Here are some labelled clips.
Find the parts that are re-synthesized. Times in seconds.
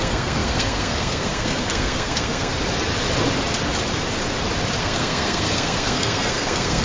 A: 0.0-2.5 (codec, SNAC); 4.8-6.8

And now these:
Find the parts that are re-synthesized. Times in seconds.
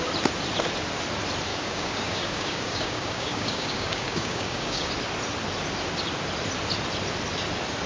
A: 1.5-4.9 (codec, DAC)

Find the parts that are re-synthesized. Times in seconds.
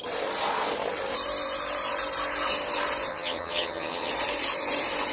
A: 3.1-4.1 (vocoder, HiFi-GAN)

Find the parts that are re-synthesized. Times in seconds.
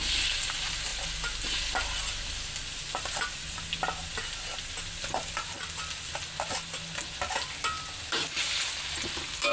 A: none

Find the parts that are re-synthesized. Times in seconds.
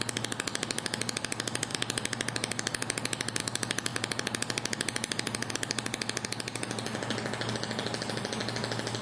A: none